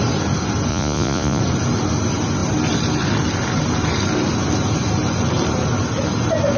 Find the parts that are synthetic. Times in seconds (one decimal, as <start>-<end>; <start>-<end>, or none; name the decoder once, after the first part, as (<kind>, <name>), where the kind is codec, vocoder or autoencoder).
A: 0.7-1.4 (vocoder, Vocos)

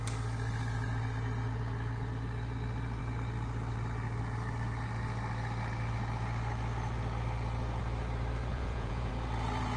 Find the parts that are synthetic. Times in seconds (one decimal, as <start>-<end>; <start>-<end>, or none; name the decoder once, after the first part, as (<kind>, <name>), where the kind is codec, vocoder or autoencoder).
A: 8.5-9.1 (vocoder, Vocos)

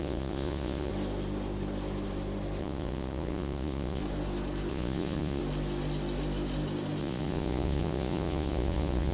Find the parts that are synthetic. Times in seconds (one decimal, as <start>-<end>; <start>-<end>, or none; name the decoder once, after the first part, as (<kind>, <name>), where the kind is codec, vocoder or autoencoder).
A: 0.0-0.9 (vocoder, Vocos); 2.6-4.0; 4.7-5.4; 7.0-9.1

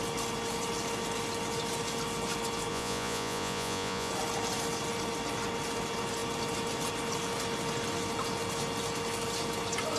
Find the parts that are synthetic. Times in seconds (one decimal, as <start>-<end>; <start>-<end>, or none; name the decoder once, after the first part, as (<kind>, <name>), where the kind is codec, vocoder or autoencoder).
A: 2.7-4.1 (vocoder, Vocos)

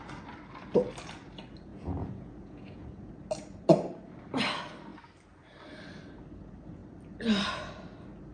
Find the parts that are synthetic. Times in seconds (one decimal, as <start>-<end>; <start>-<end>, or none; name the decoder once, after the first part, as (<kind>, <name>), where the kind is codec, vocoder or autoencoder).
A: 1.7-3.1 (vocoder, Vocos)

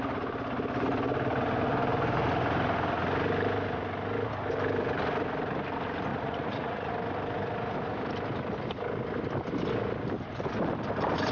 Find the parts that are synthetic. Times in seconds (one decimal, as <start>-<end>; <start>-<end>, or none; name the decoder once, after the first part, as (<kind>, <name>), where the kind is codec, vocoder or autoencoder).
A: 6.1-6.9 (vocoder, Vocos)

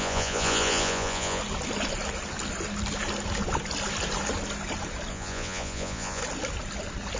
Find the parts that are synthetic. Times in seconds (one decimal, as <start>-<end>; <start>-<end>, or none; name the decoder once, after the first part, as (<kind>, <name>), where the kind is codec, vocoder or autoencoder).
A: 0.0-1.4 (vocoder, Vocos); 5.1-6.2

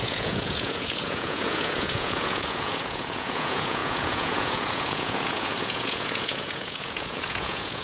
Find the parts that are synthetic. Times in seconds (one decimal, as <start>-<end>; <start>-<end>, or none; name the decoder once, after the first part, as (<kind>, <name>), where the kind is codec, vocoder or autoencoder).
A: 0.0-7.8 (vocoder, Vocos)